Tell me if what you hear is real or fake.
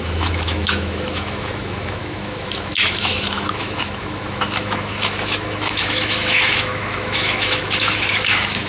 fake